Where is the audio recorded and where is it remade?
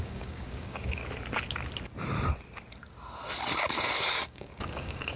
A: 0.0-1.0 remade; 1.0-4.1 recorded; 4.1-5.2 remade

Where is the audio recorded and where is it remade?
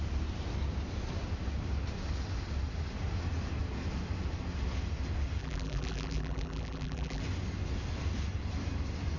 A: 0.0-5.4 recorded; 5.4-7.2 remade; 7.2-9.2 recorded